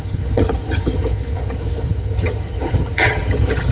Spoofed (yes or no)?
yes